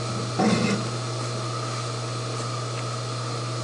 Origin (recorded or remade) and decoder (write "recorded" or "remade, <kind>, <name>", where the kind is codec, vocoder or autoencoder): recorded